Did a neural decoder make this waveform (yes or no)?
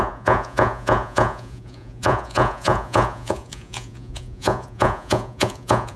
yes